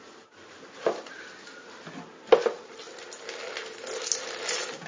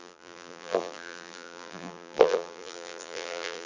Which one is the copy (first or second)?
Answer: second